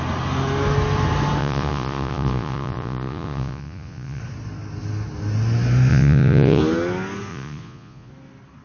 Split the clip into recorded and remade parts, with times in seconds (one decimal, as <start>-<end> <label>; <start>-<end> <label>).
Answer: 0.0-1.4 recorded; 1.4-4.2 remade; 4.2-5.9 recorded; 5.9-6.6 remade; 6.6-7.3 recorded; 7.3-8.1 remade; 8.1-8.6 recorded